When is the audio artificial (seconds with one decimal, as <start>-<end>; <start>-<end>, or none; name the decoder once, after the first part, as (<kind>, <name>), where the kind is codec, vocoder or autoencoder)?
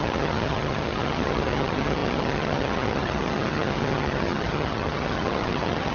0.0-5.9 (vocoder, HiFi-GAN)